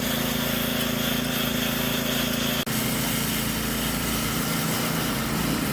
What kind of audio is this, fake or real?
real